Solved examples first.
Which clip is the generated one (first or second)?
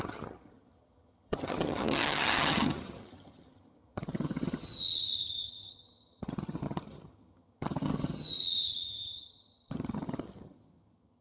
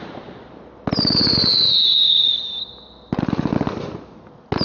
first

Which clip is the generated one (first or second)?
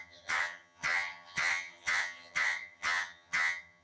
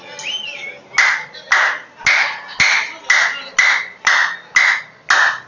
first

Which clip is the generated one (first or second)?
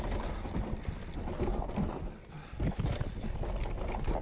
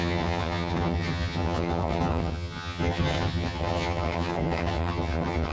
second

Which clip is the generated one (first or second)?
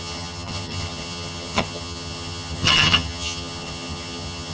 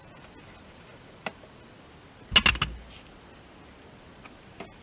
first